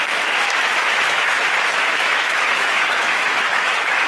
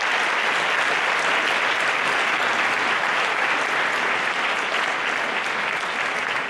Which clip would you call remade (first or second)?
first